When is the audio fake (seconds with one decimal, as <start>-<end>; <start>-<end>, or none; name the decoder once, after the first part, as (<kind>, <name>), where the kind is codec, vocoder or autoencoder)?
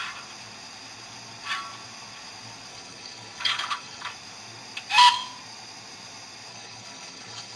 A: 2.7-4.1 (codec, HILCodec); 6.5-7.6